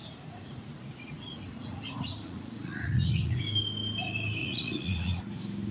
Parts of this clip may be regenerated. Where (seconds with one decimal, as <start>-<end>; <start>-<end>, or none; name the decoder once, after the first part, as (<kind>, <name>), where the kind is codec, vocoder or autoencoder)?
0.0-3.4 (vocoder, Vocos); 4.4-5.2